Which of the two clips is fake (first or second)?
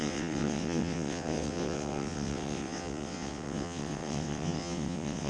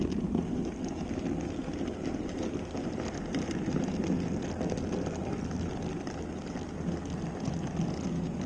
first